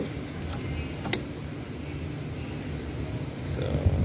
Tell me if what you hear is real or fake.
real